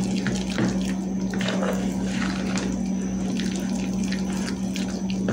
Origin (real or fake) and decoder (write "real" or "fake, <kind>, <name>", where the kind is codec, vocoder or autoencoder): real